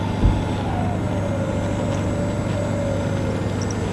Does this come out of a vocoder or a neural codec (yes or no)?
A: no